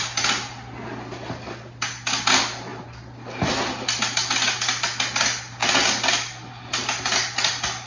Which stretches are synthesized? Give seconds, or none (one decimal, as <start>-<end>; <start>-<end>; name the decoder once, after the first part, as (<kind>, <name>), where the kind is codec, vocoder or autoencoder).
none

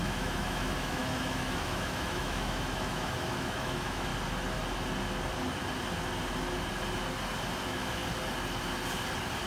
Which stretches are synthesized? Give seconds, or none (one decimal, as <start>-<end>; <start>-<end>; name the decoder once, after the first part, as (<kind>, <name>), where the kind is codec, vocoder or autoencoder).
0.0-4.1 (autoencoder, DAC-VAE); 7.6-8.0